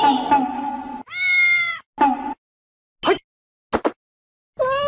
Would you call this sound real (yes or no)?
yes